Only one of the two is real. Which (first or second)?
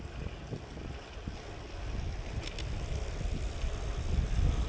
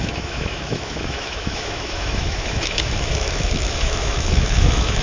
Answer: first